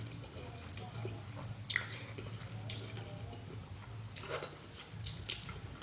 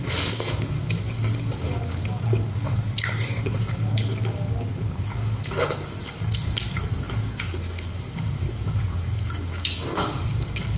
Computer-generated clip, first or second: second